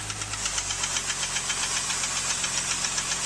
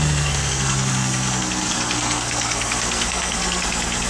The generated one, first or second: second